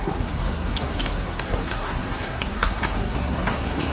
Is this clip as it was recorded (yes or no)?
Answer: no